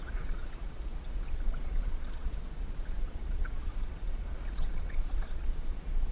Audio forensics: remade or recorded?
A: remade